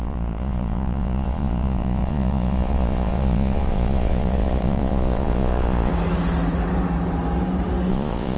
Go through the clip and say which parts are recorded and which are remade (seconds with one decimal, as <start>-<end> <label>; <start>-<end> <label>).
0.0-5.9 remade; 5.9-7.9 recorded; 7.9-8.4 remade